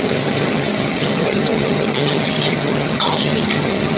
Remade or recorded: remade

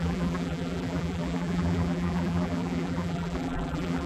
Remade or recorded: remade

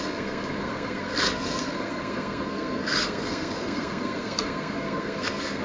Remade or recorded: remade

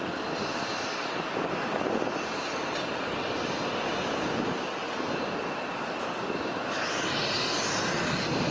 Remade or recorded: recorded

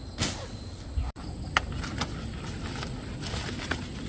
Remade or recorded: recorded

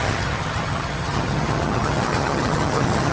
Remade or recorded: remade